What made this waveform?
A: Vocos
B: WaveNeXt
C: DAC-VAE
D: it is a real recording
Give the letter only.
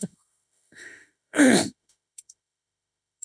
C